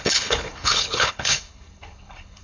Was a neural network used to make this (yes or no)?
yes